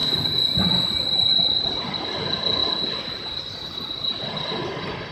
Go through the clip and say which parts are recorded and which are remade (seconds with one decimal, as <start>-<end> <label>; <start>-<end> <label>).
0.0-2.2 remade; 2.2-2.6 recorded; 2.6-3.4 remade; 3.4-5.1 recorded